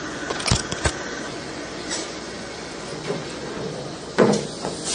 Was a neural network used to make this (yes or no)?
yes